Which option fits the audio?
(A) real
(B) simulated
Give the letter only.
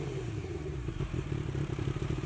B